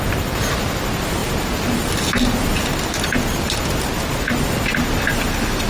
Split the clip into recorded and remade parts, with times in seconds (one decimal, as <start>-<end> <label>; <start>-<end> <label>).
0.0-5.7 recorded